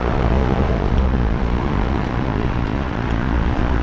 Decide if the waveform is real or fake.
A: fake